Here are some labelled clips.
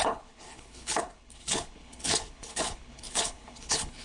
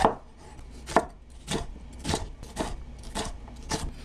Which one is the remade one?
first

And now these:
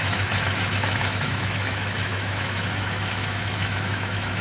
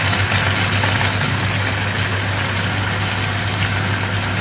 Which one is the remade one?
first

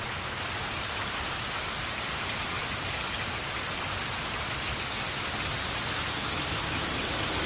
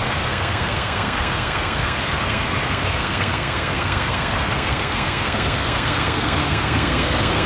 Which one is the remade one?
second